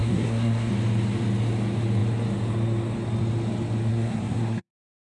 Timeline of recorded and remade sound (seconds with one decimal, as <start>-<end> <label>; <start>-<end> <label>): 0.0-0.7 remade; 0.7-3.9 recorded; 3.9-4.7 remade; 4.7-5.2 recorded